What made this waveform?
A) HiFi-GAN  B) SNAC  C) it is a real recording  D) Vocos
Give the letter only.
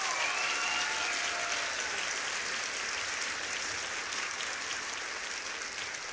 C